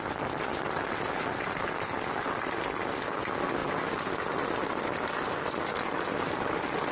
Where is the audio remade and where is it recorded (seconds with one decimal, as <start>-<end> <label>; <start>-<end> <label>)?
0.0-6.9 recorded